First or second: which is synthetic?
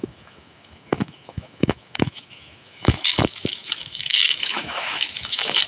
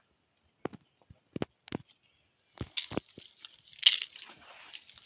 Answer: first